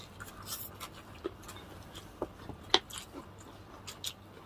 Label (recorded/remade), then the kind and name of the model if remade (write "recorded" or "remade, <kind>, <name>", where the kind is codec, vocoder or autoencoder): recorded